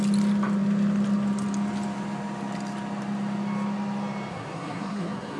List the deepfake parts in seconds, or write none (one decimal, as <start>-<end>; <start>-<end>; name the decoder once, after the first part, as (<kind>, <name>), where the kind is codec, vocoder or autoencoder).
4.3-5.4 (codec, SNAC)

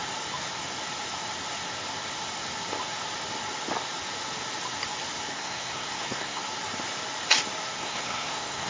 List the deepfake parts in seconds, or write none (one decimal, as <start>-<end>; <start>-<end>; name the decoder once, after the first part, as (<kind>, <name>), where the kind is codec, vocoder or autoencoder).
5.3-6.4 (codec, SNAC); 7.8-8.7